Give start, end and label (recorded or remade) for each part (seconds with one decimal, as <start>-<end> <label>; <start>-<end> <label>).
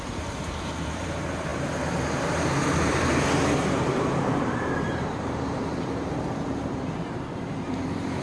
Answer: 0.0-8.2 remade